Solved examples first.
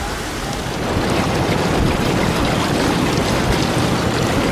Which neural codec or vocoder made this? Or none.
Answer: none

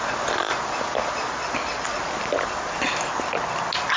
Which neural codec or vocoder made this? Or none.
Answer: none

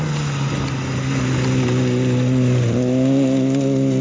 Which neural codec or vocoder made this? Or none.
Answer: none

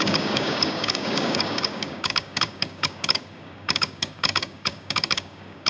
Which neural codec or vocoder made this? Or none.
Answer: codec, DAC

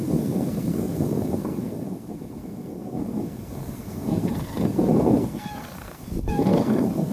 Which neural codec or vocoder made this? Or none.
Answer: codec, SNAC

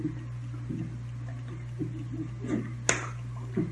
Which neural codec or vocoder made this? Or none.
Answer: none